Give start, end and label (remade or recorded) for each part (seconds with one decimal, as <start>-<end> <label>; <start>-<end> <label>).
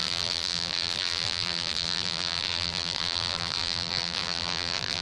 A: 0.0-5.0 remade